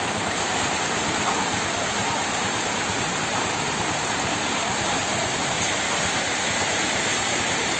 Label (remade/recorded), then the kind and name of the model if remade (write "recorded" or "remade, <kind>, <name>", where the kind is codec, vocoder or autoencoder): remade, vocoder, BigVGAN v2